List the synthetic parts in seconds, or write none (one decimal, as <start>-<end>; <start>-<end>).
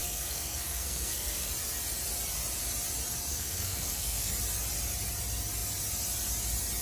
0.0-1.5; 3.3-4.3